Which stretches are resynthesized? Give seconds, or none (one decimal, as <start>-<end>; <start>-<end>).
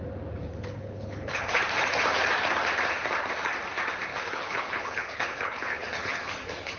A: 0.4-1.6; 4.1-6.8